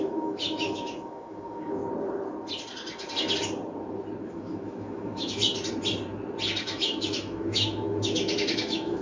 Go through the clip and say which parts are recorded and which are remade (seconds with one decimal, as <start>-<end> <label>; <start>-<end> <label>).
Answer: 0.0-1.8 remade; 1.8-4.3 recorded; 4.3-5.4 remade; 5.4-6.6 recorded; 6.6-9.0 remade

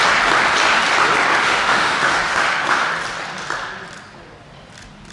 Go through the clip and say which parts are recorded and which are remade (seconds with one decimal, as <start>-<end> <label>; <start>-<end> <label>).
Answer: 0.0-1.3 recorded; 1.3-2.9 remade; 2.9-5.1 recorded

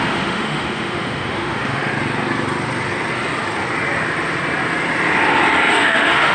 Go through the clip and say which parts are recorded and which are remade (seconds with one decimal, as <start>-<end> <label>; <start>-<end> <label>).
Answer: 0.0-1.9 remade; 1.9-5.7 recorded; 5.7-6.3 remade

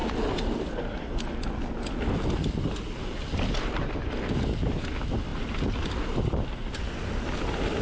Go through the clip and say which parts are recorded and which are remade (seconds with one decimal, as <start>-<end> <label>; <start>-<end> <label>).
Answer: 0.0-7.8 recorded